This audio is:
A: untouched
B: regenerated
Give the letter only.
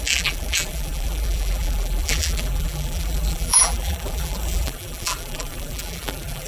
B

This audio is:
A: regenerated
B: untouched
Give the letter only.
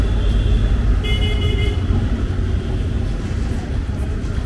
B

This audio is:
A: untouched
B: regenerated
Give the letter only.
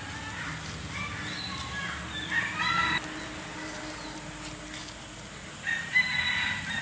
A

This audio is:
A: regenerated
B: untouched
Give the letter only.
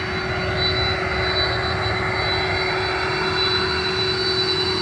B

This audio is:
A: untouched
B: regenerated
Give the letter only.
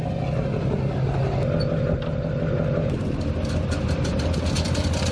A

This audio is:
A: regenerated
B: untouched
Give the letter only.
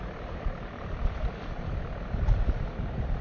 A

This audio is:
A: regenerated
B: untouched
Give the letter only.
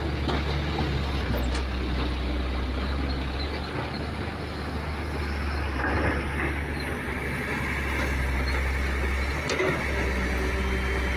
B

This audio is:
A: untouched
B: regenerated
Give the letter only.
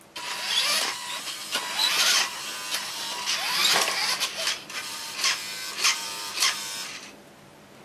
B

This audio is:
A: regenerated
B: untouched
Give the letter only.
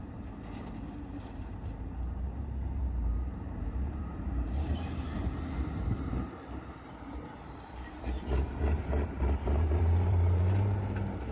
A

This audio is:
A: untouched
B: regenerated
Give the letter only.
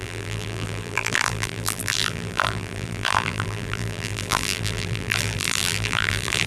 B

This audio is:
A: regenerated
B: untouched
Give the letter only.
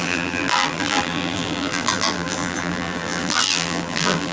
A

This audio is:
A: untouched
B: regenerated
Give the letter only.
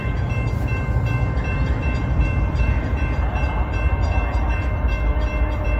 B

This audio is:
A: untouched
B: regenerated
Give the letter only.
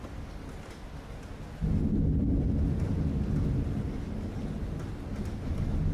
A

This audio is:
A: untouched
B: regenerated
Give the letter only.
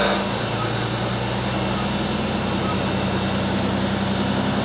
A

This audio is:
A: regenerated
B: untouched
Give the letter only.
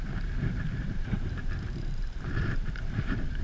A